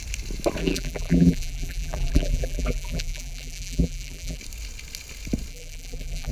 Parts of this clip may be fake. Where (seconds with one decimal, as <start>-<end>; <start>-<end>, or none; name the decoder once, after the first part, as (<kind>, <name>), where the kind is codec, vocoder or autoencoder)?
0.6-4.4 (vocoder, BigVGAN v2); 5.5-6.3